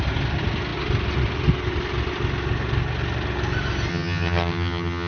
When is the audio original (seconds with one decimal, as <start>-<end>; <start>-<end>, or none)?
0.0-3.9